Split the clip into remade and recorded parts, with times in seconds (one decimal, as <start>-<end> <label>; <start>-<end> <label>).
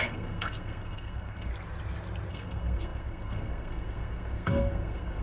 0.0-1.5 remade; 1.5-2.3 recorded; 2.3-5.2 remade